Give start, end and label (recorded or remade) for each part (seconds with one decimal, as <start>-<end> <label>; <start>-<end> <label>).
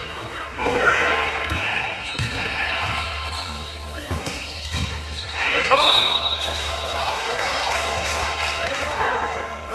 0.0-9.7 remade